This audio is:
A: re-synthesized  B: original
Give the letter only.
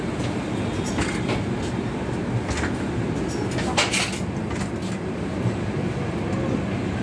B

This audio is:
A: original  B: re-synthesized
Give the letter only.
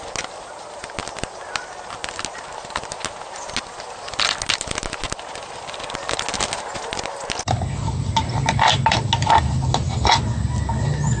A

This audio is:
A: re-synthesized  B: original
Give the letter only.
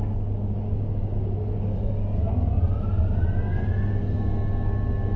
B